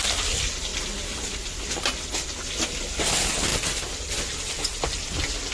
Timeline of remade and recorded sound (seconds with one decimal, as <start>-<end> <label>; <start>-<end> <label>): 0.0-5.5 recorded